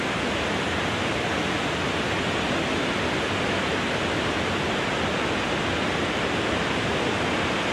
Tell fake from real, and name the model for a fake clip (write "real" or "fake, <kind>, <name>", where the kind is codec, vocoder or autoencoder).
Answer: real